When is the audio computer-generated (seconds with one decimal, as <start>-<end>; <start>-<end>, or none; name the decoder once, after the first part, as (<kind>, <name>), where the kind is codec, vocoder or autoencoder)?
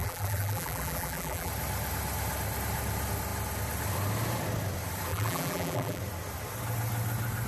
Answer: 0.0-1.5 (vocoder, BigVGAN v2); 5.1-6.0